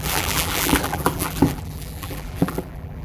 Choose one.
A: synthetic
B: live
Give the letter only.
A